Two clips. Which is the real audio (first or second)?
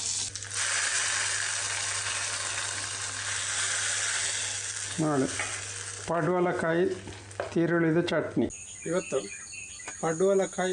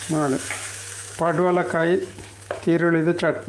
first